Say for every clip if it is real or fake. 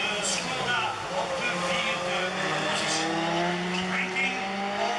real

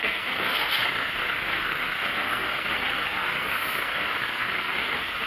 fake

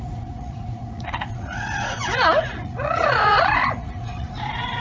fake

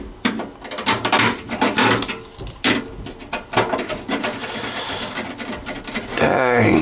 real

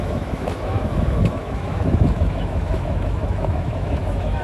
fake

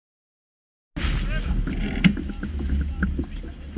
real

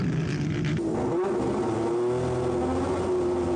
real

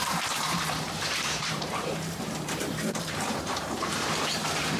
fake